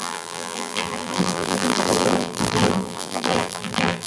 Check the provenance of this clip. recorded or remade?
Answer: remade